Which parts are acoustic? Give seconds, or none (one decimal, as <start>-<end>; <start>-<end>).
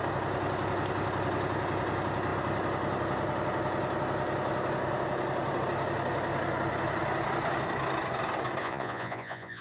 0.0-8.6